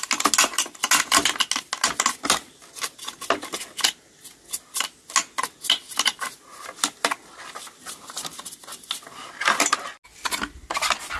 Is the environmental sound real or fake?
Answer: real